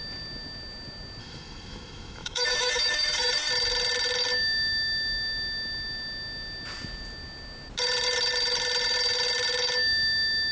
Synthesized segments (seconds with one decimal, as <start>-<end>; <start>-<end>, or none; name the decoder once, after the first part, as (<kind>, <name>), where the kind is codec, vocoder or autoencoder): 1.2-3.5 (autoencoder, DAC-VAE)